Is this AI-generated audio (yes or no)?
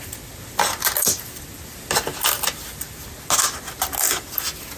no